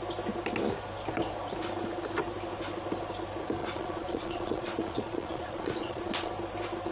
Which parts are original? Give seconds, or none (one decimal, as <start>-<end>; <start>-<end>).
0.0-3.6; 6.3-6.9